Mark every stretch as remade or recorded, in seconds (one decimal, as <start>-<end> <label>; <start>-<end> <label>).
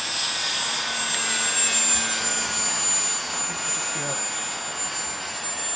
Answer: 0.0-5.8 recorded